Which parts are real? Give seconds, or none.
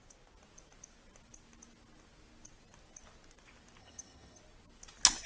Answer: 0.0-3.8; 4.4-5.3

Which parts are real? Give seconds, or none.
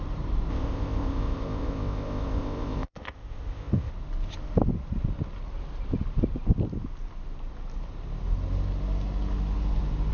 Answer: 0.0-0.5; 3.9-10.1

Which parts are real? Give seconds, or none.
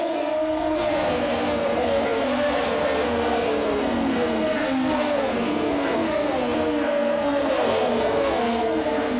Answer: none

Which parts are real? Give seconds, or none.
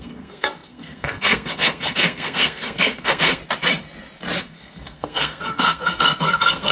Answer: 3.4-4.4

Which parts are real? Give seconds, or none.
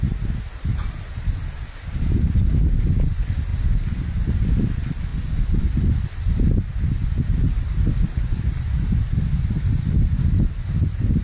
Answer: 0.0-11.2